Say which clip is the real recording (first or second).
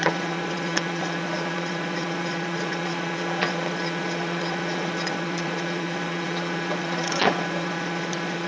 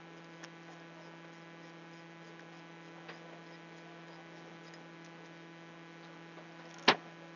second